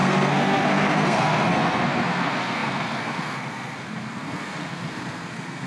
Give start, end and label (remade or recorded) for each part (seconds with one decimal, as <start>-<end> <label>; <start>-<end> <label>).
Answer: 0.0-5.7 remade